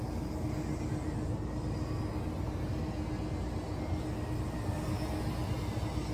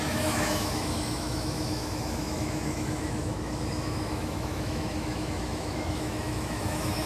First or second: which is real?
first